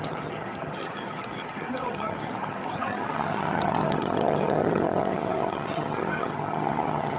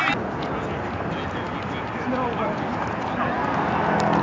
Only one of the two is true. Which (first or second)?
second